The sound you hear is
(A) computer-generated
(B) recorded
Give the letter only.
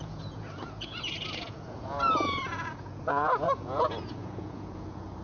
A